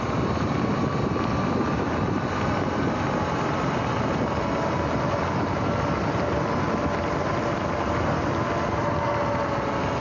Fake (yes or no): no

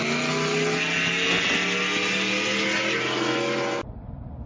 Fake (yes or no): no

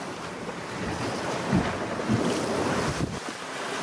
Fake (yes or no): no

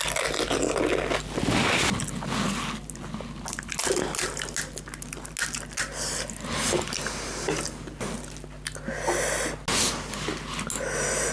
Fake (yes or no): no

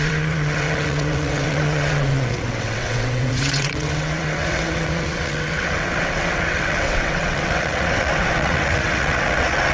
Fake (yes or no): yes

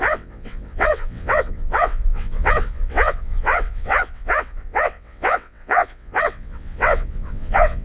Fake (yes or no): yes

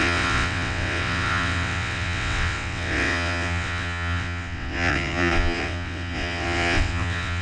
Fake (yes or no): yes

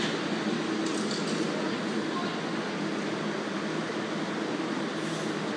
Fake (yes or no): no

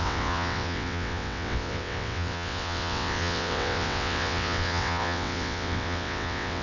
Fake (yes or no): yes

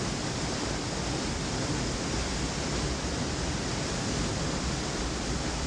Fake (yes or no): no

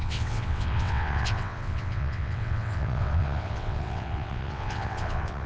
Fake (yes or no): yes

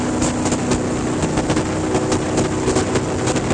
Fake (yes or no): no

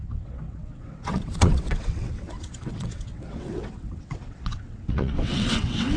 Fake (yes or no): yes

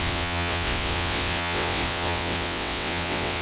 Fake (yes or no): yes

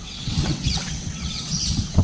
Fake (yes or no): yes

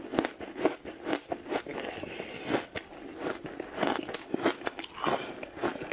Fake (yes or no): no